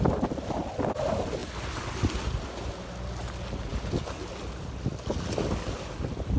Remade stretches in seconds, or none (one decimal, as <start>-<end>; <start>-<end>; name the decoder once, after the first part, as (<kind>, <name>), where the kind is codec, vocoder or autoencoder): none